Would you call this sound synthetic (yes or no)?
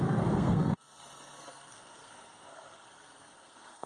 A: yes